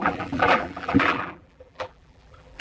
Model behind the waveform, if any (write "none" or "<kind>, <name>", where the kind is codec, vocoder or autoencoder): vocoder, BigVGAN v2